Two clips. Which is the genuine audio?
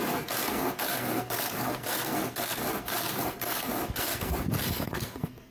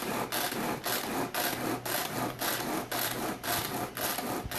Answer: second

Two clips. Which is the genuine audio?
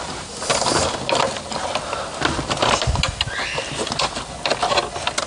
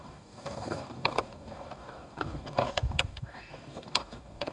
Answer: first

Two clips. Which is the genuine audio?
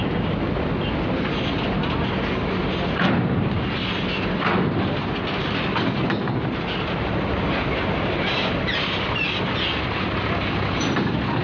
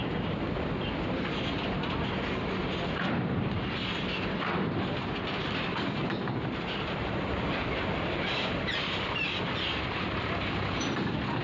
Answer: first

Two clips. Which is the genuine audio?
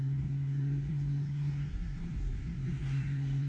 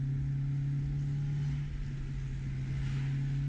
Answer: second